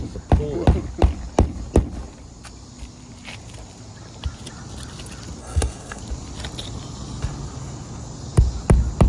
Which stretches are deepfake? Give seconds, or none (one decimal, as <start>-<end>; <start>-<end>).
5.4-6.0